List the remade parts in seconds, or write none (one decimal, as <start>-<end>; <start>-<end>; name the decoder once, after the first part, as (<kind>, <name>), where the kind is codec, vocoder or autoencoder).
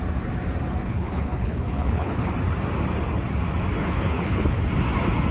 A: 0.8-2.3 (codec, HILCodec); 3.8-4.6